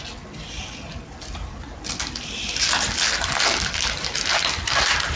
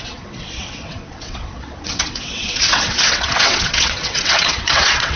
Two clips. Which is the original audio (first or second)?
first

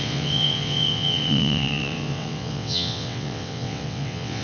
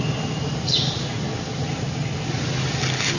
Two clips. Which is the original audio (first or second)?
second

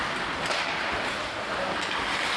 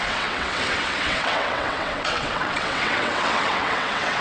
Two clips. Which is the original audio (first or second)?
first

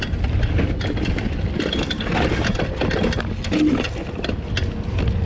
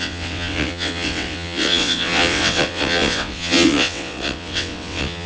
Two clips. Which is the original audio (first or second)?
first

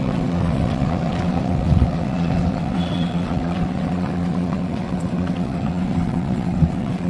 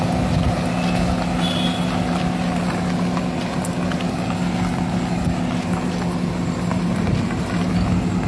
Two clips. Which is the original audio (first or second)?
second